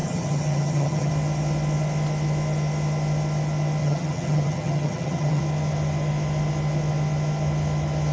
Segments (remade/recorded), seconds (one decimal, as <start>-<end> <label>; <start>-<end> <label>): 0.0-1.1 remade; 1.1-3.8 recorded; 3.8-5.4 remade; 5.4-8.1 recorded